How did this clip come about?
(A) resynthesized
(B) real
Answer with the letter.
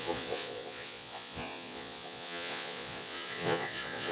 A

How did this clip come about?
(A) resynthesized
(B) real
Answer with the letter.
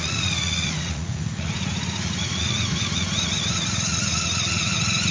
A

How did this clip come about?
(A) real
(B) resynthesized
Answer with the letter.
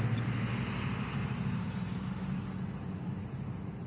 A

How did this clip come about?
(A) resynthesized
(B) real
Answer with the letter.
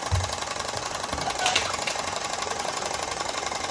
A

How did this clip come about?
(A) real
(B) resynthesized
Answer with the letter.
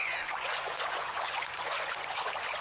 B